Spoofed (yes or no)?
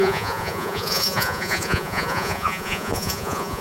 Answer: yes